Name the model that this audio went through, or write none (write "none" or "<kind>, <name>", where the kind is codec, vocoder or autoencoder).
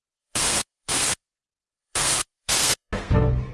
codec, SNAC